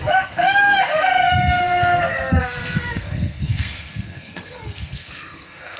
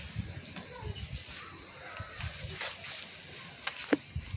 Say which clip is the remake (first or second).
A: first